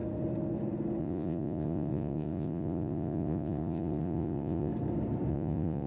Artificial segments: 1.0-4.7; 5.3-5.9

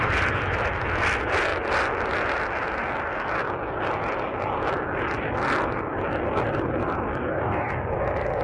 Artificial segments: 7.2-7.7

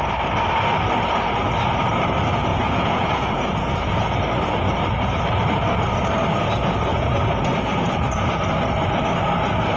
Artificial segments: 2.5-4.2; 6.9-7.5

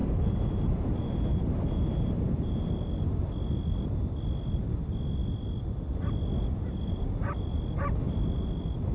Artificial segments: 0.0-2.7

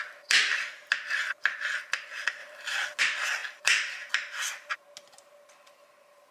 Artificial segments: none